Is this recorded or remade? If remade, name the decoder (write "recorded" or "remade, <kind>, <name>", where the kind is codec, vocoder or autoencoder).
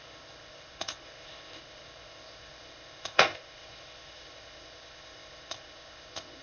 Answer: remade, codec, ZipCodec